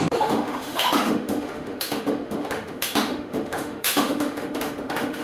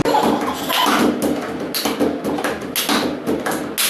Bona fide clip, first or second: second